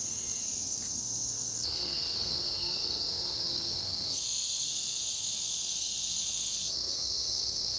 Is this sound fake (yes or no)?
yes